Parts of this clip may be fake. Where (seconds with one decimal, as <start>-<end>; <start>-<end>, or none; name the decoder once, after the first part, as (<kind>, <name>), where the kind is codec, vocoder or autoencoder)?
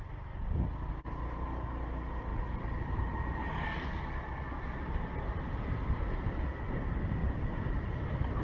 none